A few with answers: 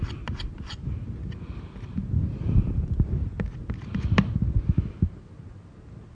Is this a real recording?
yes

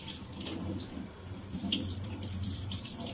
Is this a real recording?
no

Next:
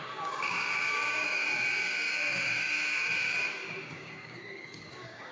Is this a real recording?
no